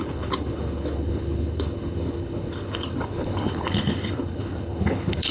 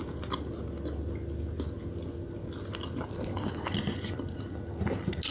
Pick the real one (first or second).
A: second